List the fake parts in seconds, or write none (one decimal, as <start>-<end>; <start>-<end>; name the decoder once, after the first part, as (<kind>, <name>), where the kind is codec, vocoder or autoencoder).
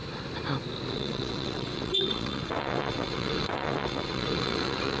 0.9-5.0 (vocoder, WaveNeXt)